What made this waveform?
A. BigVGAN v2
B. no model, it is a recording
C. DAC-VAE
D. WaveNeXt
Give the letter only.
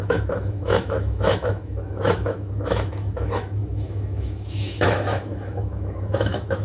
C